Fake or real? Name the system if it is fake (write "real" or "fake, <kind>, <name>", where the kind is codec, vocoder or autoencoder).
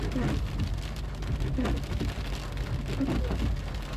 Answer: real